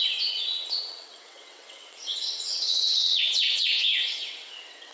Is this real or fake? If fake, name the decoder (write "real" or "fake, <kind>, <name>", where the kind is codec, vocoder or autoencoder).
fake, vocoder, WaveNeXt